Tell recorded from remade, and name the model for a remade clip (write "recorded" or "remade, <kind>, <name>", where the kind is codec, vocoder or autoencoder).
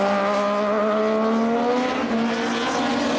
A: recorded